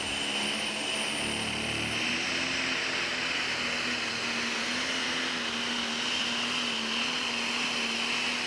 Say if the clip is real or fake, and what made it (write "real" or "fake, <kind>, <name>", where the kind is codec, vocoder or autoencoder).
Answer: real